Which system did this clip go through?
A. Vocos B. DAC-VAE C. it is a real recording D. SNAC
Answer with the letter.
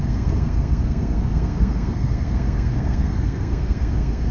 D